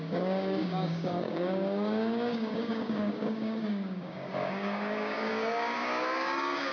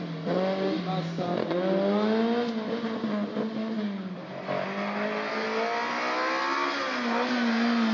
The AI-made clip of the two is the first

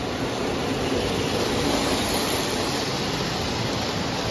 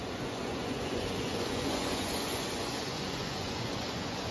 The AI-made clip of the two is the second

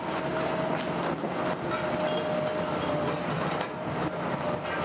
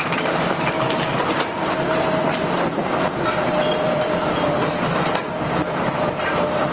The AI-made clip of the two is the second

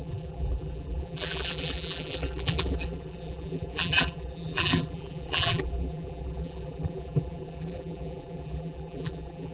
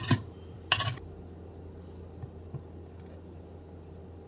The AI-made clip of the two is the first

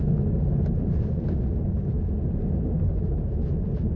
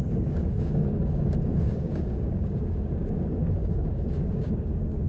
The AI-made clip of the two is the second